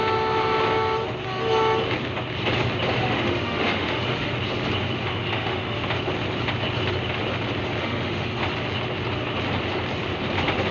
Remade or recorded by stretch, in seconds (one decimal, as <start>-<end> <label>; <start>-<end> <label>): 0.0-3.0 recorded; 3.0-4.3 remade; 4.3-5.1 recorded; 5.1-5.8 remade; 5.8-7.8 recorded; 7.8-8.4 remade; 8.4-10.7 recorded

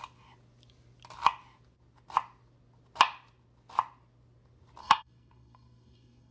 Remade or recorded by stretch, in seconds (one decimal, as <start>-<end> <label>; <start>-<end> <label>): 0.0-4.8 recorded; 4.8-6.3 remade

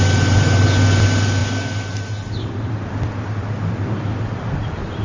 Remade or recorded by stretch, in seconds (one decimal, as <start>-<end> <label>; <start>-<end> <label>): 0.0-5.0 recorded

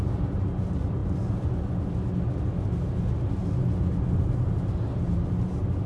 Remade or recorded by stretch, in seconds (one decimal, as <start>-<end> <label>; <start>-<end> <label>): 0.0-5.9 recorded

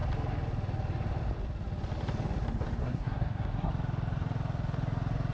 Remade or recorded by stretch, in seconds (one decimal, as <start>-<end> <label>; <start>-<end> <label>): 0.0-2.8 recorded; 2.8-3.7 remade; 3.7-5.3 recorded

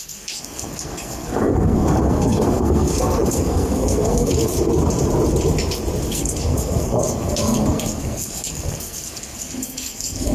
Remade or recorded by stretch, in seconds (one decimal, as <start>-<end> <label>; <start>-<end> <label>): 0.0-4.5 remade; 4.5-6.1 recorded; 6.1-10.3 remade

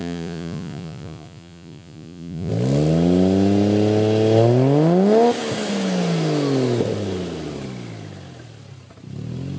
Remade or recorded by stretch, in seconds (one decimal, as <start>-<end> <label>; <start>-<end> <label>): 0.0-2.5 remade; 2.5-9.6 recorded

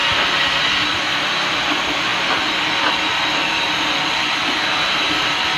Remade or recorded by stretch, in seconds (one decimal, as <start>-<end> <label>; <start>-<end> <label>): 0.0-3.4 recorded; 3.4-4.1 remade; 4.1-5.6 recorded